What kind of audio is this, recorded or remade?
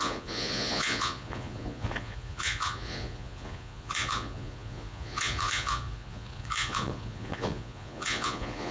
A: remade